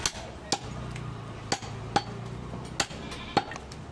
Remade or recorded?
recorded